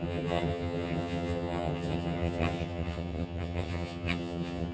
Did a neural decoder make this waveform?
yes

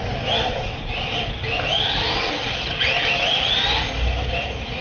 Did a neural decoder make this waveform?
no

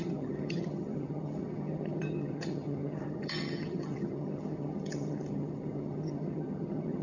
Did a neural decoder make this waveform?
yes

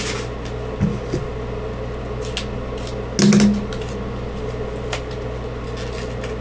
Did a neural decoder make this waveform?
no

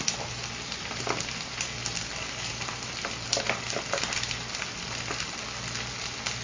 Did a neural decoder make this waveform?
no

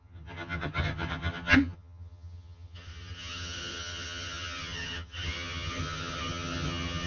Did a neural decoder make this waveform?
yes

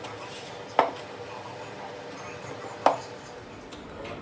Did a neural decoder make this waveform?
no